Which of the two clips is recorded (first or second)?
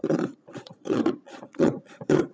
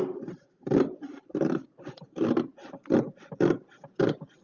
second